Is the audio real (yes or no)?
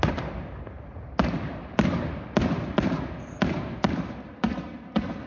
yes